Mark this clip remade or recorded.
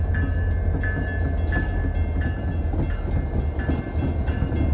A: recorded